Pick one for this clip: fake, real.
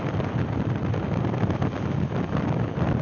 real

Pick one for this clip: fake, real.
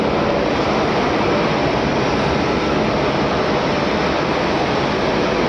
real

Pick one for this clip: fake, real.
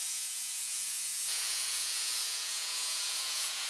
fake